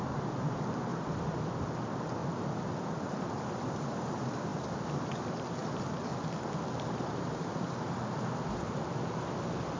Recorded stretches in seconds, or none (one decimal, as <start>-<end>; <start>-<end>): 2.2-3.5; 6.1-8.7